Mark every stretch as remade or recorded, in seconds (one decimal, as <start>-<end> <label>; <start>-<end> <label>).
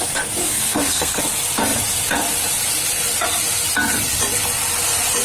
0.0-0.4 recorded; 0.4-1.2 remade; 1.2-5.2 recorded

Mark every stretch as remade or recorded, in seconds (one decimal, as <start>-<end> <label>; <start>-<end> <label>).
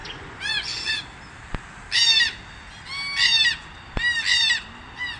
0.0-0.9 remade; 0.9-5.2 recorded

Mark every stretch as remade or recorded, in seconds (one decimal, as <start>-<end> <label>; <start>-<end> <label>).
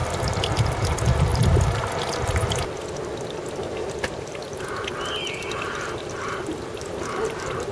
0.0-1.3 recorded; 1.3-2.7 remade; 2.7-3.8 recorded; 3.8-7.7 remade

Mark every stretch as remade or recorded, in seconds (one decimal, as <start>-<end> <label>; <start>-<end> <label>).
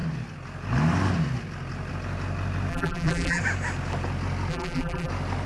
0.0-2.7 recorded; 2.7-3.4 remade; 3.4-4.5 recorded; 4.5-5.1 remade; 5.1-5.5 recorded